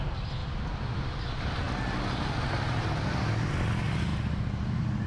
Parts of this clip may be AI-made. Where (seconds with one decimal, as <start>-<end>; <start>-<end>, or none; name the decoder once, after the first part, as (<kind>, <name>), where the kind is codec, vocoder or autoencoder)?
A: 4.1-4.6 (vocoder, BigVGAN v2)